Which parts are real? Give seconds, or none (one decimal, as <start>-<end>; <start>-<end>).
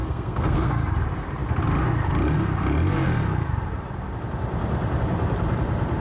0.7-6.0